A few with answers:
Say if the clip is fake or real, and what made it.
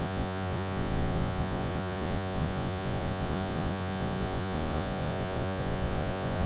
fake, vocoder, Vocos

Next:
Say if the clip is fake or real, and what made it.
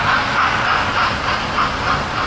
real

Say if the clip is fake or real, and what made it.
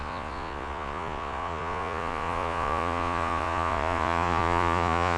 fake, vocoder, Vocos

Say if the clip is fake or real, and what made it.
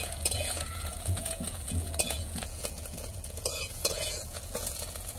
fake, vocoder, Vocos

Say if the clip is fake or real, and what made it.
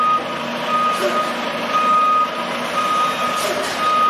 real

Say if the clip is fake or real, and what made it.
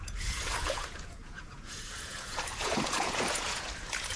fake, vocoder, Vocos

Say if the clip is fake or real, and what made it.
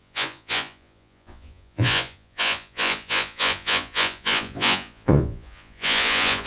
fake, vocoder, Vocos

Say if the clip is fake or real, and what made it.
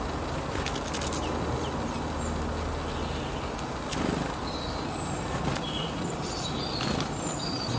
real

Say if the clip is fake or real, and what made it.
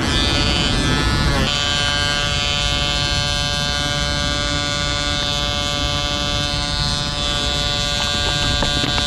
real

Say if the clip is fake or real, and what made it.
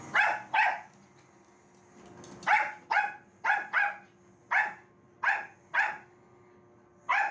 real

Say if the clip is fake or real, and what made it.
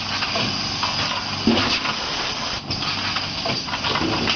real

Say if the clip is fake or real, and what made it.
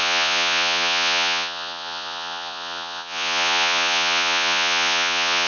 fake, vocoder, Vocos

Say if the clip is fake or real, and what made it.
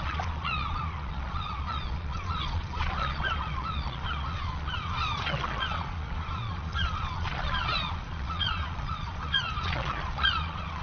fake, vocoder, Vocos